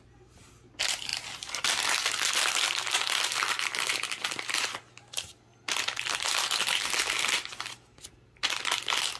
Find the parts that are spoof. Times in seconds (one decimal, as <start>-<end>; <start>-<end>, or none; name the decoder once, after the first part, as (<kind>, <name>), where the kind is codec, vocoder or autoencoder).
none